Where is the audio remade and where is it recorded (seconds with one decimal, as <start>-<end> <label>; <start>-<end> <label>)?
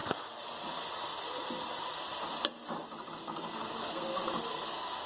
0.0-3.2 recorded; 3.2-5.1 remade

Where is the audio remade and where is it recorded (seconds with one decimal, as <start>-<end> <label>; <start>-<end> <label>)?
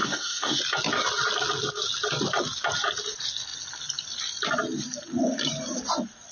0.0-0.6 remade; 0.6-6.3 recorded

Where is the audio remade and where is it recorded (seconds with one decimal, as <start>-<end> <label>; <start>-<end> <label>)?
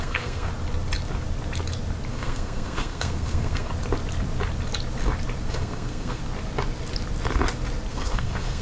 0.0-0.5 remade; 0.5-2.1 recorded; 2.1-3.7 remade; 3.7-5.5 recorded; 5.5-6.2 remade; 6.2-7.9 recorded; 7.9-8.6 remade